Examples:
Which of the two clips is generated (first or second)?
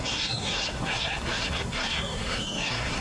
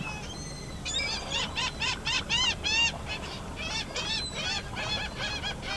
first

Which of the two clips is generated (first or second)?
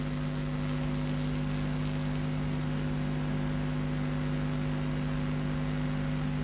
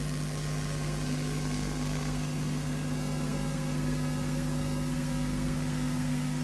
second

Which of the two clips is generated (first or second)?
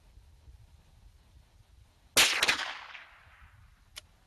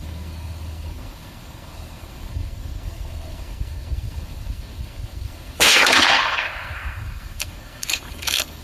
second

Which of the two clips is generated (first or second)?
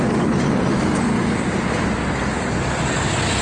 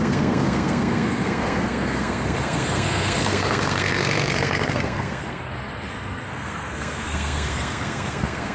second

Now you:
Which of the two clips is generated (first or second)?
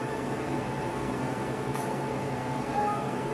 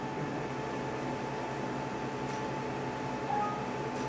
first